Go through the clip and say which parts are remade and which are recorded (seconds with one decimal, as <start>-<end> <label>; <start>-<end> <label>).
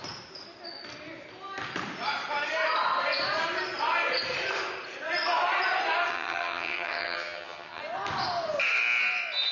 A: 0.0-6.1 recorded; 6.1-7.8 remade; 7.8-9.5 recorded